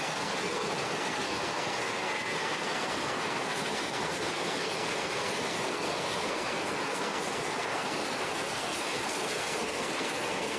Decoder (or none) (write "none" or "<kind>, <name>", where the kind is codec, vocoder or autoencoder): codec, SNAC